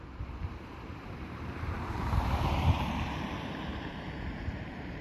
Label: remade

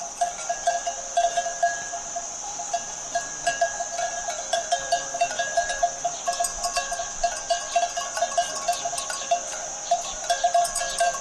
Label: remade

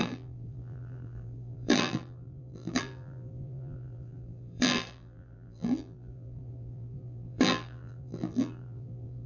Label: remade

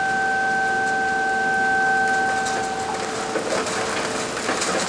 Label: recorded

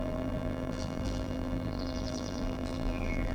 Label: remade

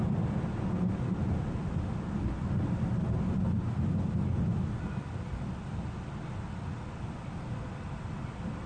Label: recorded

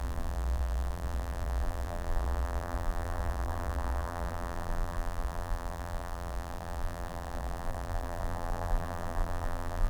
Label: remade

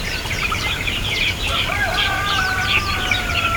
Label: remade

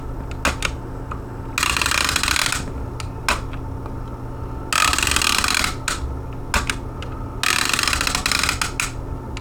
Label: recorded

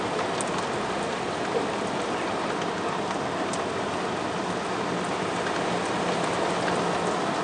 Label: recorded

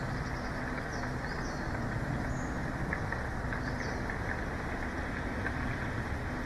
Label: recorded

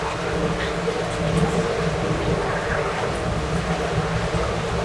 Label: recorded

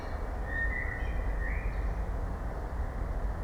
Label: recorded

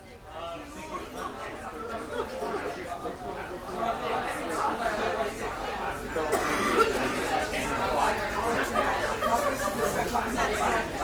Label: recorded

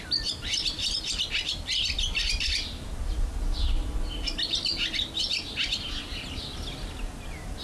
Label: recorded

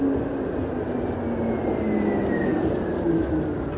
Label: recorded